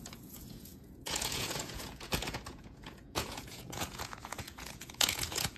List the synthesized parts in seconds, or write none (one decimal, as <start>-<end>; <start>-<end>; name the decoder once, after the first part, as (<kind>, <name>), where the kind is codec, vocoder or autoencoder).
0.0-5.6 (vocoder, Vocos)